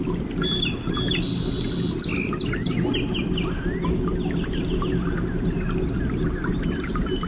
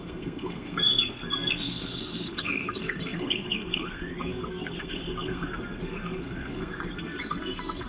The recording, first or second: first